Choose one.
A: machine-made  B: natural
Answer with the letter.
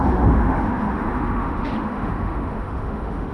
A